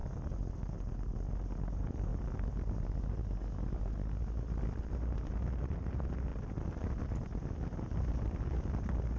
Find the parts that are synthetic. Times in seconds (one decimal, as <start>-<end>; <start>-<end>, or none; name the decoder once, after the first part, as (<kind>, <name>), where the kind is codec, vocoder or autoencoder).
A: none